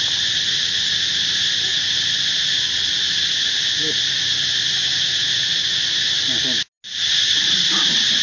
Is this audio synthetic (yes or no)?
no